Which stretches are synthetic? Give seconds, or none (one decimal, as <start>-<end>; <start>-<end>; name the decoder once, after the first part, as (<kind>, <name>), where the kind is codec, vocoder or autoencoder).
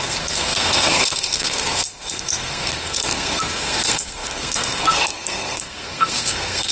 0.0-6.7 (codec, SNAC)